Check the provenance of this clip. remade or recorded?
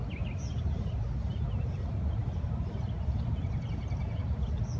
recorded